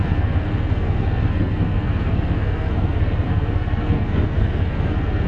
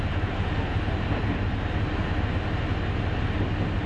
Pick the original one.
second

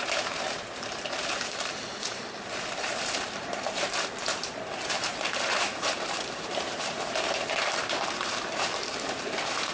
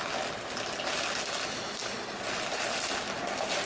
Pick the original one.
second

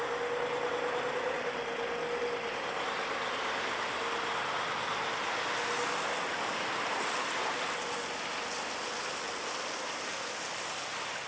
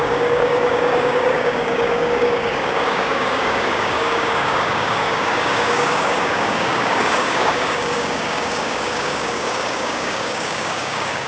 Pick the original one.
first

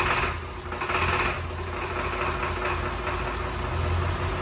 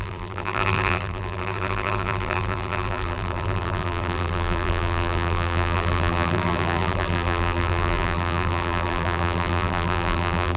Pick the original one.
first